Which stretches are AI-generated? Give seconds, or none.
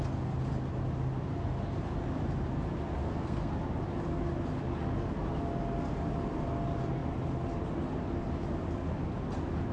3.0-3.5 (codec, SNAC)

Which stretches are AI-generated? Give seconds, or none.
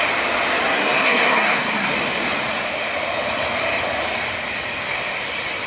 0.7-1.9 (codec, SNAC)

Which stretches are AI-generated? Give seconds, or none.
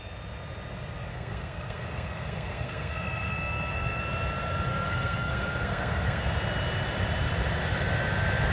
1.1-4.0 (codec, SNAC); 4.7-6.2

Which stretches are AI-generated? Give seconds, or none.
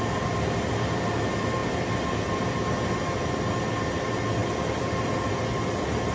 none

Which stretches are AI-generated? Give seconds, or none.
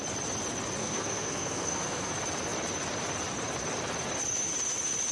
0.8-2.1 (codec, SNAC)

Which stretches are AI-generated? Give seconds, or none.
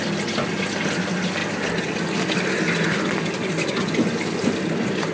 none